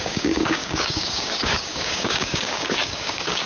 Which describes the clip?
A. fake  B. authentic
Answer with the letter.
A